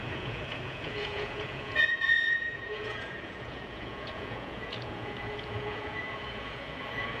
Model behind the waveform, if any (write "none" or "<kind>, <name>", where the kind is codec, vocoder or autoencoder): vocoder, Vocos